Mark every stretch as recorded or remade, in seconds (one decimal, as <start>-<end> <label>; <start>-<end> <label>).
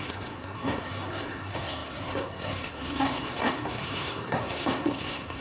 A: 0.0-5.4 remade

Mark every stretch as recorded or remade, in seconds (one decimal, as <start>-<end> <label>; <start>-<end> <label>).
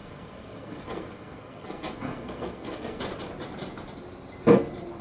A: 0.0-3.0 remade; 3.0-5.0 recorded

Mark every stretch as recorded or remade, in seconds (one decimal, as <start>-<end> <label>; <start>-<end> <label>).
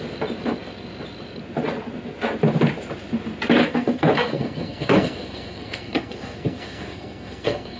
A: 0.0-3.6 recorded; 3.6-7.8 remade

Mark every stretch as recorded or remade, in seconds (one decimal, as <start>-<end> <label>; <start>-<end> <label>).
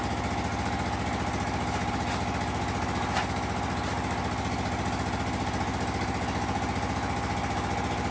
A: 0.0-8.1 recorded